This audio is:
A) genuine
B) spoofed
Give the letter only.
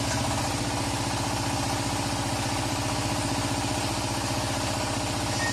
A